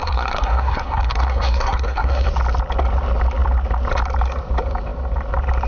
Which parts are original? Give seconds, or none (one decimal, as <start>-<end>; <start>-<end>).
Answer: 2.3-5.7